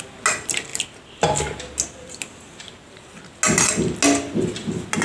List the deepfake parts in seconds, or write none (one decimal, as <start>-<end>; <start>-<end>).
none